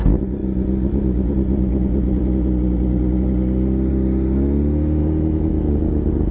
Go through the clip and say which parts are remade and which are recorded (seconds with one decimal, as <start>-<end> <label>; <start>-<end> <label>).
0.0-5.0 recorded; 5.0-5.7 remade; 5.7-6.3 recorded

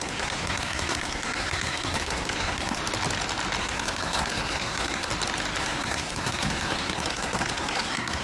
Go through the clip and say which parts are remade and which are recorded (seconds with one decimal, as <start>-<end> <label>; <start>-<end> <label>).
0.0-2.8 remade; 2.8-3.6 recorded; 3.6-5.1 remade; 5.1-5.6 recorded; 5.6-8.2 remade

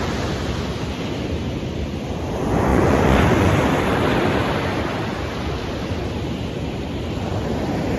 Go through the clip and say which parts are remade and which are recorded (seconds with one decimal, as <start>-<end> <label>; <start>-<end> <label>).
0.0-2.7 recorded; 2.7-3.5 remade; 3.5-8.0 recorded

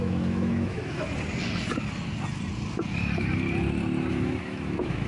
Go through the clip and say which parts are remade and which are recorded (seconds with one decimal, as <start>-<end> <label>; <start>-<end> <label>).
0.0-1.0 remade; 1.0-4.1 recorded; 4.1-5.1 remade

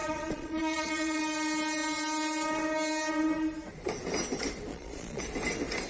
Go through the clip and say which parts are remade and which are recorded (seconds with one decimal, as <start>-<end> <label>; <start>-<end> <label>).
0.0-1.2 remade; 1.2-4.7 recorded; 4.7-5.2 remade; 5.2-5.9 recorded

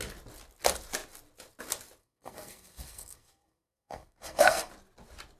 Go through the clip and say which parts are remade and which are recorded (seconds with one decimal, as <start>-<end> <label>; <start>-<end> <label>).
0.0-2.0 recorded; 2.0-4.7 remade; 4.7-5.4 recorded

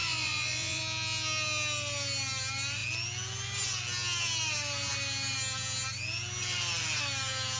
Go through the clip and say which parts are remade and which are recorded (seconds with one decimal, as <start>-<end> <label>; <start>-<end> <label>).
0.0-0.8 remade; 0.8-7.6 recorded

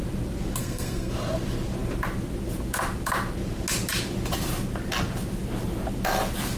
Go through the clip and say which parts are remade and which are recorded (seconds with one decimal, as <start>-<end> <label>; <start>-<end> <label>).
0.0-0.6 recorded; 0.6-1.1 remade; 1.1-6.6 recorded